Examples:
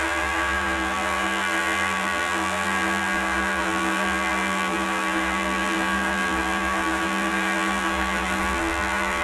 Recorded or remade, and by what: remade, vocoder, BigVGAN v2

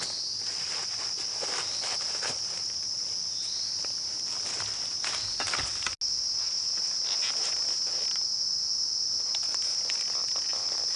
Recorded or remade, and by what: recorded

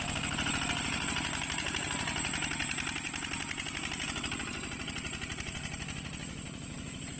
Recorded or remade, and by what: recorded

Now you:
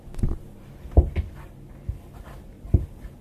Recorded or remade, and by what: recorded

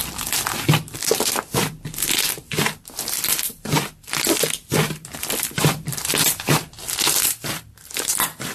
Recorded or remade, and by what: remade, vocoder, BigVGAN v2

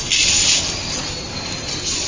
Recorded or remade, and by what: recorded